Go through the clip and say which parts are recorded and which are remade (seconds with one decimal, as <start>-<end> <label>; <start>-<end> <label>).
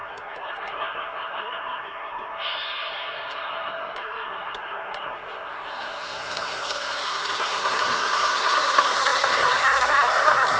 0.0-10.6 remade